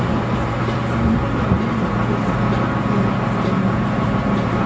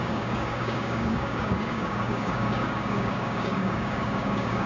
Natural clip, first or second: first